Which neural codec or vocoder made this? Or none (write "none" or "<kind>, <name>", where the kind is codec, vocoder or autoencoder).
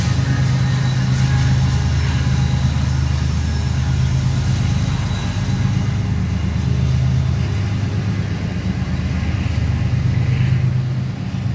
none